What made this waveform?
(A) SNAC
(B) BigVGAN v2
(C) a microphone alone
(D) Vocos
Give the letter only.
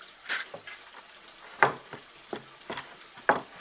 C